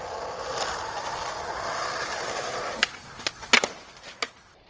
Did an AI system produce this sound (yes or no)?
no